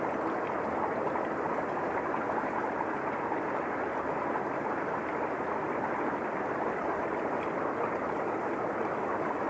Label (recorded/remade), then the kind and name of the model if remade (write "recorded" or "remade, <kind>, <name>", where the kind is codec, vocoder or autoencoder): remade, vocoder, BigVGAN v2